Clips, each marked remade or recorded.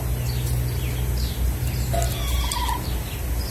recorded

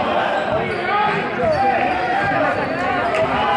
recorded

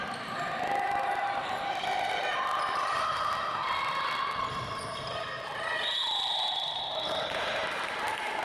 recorded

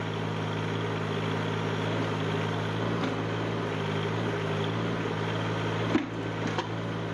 recorded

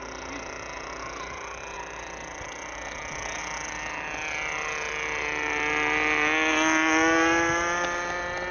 recorded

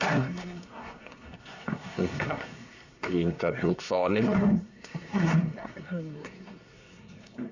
remade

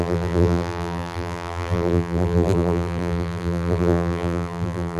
remade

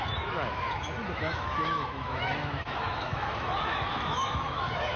remade